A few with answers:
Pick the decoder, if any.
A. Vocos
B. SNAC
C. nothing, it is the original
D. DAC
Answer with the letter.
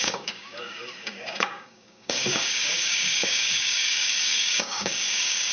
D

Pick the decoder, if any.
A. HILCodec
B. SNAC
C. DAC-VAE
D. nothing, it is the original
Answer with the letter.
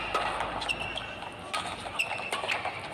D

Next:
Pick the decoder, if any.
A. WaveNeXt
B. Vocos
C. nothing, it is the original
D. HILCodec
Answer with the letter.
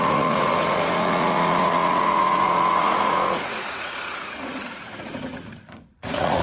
B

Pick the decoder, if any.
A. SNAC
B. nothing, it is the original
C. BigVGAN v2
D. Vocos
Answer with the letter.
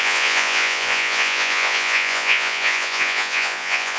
D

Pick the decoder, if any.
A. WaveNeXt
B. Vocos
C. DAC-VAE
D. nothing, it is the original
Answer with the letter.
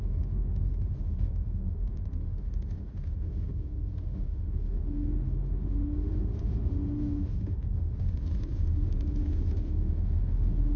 C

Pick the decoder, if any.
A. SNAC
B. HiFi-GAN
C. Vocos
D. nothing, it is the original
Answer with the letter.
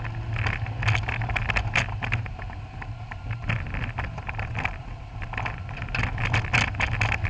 D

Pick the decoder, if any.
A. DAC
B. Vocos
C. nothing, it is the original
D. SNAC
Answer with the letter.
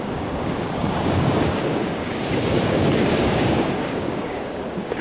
A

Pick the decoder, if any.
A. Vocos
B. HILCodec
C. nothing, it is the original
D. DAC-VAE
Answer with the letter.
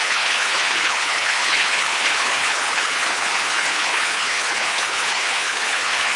B